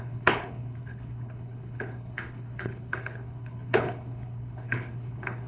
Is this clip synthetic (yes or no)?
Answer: yes